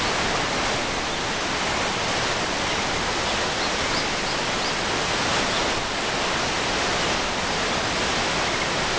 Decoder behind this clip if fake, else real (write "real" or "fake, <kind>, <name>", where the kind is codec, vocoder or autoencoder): real